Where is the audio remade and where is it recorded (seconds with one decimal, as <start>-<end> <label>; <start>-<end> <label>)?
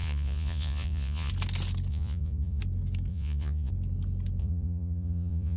0.0-1.3 remade; 1.3-1.9 recorded; 1.9-2.6 remade; 2.6-3.1 recorded; 3.1-3.7 remade; 3.7-4.4 recorded; 4.4-5.6 remade